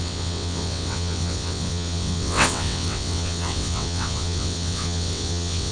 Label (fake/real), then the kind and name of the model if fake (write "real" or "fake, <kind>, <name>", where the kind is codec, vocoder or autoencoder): fake, vocoder, WaveNeXt